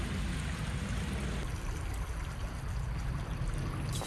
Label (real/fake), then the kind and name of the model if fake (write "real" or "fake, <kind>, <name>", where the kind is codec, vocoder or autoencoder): real